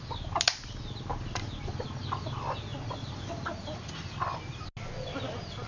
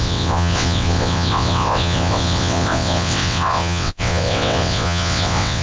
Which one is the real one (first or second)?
first